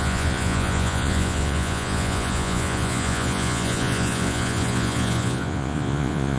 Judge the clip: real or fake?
fake